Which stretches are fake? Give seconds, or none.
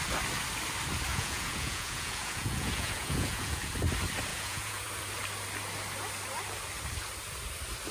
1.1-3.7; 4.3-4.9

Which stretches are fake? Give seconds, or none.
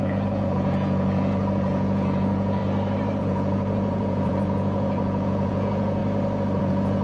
0.0-2.6; 3.2-6.0; 6.6-7.0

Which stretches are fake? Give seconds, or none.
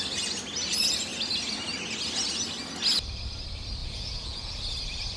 3.8-4.5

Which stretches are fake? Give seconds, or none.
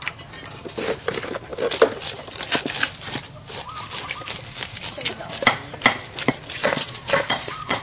6.6-7.8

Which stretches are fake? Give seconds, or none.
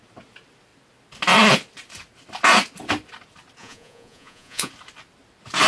3.6-4.7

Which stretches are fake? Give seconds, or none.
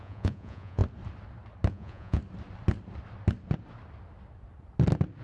0.0-0.8; 1.7-2.2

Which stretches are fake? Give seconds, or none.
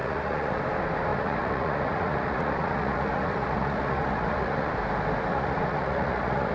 0.0-0.6; 1.1-4.7; 5.3-6.5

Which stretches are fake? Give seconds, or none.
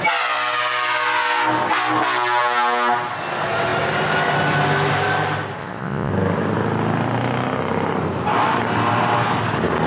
5.6-6.1